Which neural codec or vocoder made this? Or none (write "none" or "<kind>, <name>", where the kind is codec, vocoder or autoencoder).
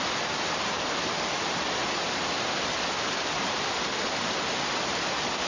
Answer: none